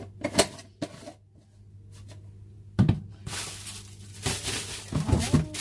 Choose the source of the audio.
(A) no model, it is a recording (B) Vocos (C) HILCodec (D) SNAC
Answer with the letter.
A